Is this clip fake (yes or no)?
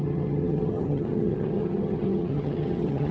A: yes